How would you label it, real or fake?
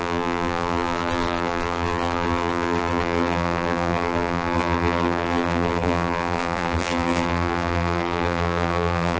fake